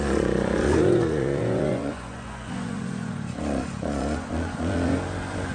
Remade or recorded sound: remade